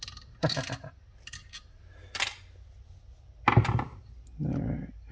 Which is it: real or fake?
real